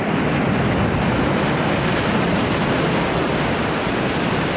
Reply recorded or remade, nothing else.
recorded